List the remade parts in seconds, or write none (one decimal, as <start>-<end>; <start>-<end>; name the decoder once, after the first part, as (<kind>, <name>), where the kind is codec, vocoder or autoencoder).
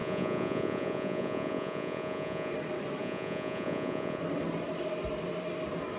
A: 0.0-2.5 (vocoder, Vocos); 3.0-4.2